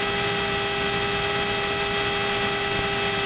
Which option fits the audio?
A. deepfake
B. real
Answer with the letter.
B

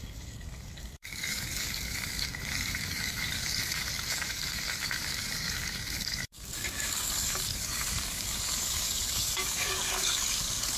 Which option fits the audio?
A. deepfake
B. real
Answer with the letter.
A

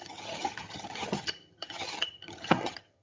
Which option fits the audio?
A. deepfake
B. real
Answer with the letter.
A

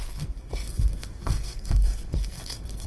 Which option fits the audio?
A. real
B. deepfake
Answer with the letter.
B